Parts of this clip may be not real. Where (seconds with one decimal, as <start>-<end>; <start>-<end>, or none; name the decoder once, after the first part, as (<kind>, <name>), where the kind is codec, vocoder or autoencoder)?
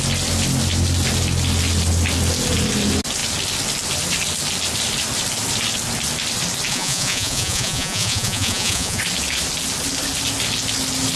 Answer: 6.7-9.0 (vocoder, Vocos)